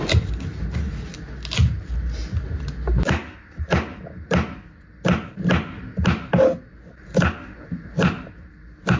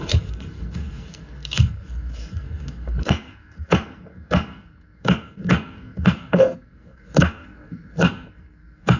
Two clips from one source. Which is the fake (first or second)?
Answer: second